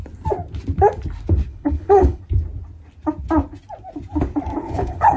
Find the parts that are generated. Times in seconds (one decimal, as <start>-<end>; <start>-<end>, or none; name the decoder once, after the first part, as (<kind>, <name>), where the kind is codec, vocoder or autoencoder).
1.5-2.2 (codec, HILCodec); 4.6-5.2